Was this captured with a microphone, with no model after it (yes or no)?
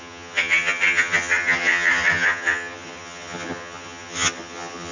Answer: no